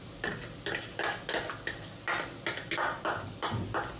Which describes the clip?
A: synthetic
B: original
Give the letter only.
B